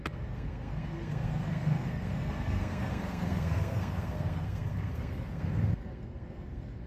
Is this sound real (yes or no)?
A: no